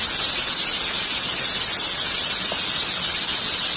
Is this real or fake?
real